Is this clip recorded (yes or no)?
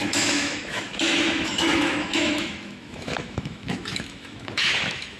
no